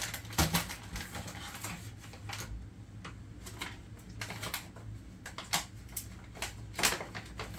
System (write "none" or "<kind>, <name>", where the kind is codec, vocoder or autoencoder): none